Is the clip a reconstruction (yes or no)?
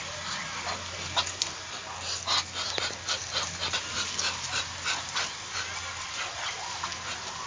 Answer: no